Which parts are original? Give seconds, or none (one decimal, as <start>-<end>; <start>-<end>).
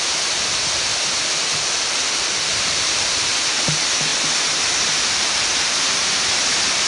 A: 0.0-2.5; 3.3-6.9